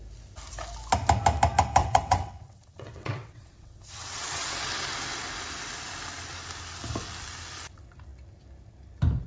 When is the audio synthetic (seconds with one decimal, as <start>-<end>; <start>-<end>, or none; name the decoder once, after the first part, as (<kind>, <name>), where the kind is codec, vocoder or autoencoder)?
1.8-4.7 (vocoder, WaveNeXt)